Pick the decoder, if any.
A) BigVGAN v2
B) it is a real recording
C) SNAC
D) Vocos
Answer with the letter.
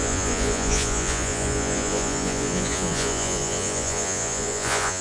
D